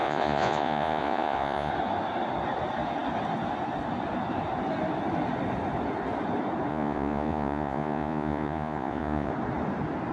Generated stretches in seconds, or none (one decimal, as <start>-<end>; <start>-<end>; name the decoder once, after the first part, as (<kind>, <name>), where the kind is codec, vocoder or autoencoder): 0.0-1.7 (vocoder, Vocos); 6.7-9.3